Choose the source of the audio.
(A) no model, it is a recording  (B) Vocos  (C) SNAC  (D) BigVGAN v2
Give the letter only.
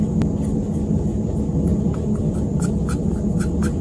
A